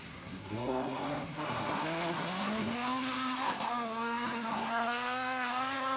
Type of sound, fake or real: fake